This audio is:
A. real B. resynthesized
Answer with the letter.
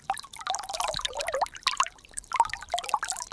B